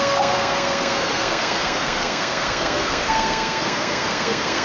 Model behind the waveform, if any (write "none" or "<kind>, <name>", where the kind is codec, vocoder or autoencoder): codec, SNAC